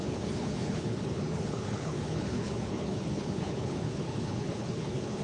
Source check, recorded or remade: remade